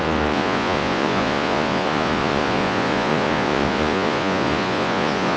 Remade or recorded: remade